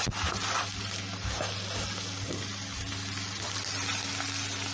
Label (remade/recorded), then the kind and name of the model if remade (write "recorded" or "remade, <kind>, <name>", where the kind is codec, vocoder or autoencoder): recorded